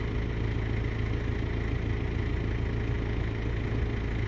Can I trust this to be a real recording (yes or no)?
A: yes